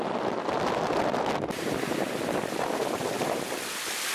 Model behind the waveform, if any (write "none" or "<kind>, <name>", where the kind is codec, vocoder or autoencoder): none